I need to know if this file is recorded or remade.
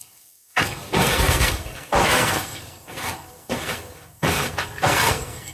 remade